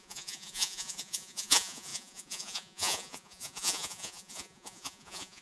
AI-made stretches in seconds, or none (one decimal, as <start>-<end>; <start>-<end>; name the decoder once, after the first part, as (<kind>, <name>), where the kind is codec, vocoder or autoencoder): 0.0-5.4 (vocoder, Vocos)